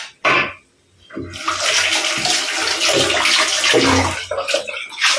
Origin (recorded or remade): recorded